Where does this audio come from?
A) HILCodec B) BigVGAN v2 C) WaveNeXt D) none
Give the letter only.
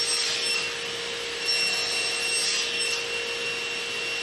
D